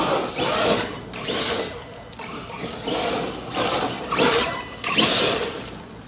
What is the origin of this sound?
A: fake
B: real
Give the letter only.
B